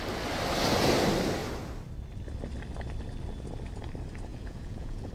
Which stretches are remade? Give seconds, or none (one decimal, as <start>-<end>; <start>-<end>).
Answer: 4.3-5.1

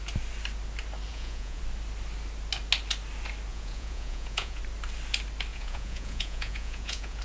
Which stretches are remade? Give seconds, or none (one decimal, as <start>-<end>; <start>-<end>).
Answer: 1.1-1.6; 3.5-4.6; 5.5-7.2